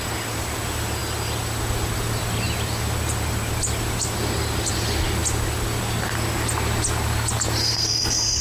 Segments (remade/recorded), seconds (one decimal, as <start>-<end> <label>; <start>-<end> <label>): 0.0-7.6 recorded; 7.6-8.4 remade